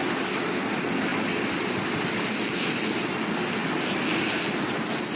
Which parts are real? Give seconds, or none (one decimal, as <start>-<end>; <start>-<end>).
0.0-1.1; 3.2-3.6; 4.2-5.2